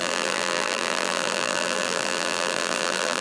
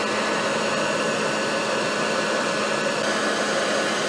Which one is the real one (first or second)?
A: second